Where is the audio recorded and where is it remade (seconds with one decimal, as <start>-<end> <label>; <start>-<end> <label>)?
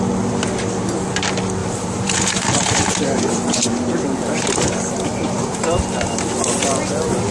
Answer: 0.0-1.6 recorded; 1.6-5.6 remade; 5.6-7.3 recorded